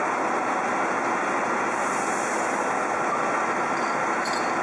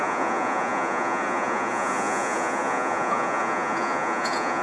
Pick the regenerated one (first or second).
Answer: second